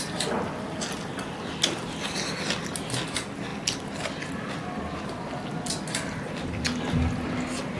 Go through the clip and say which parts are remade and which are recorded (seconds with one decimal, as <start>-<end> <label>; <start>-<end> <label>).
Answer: 0.0-7.8 recorded